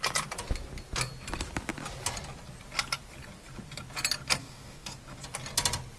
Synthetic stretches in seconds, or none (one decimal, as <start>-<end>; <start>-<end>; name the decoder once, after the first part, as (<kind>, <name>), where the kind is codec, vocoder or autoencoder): 4.4-4.9 (codec, DAC)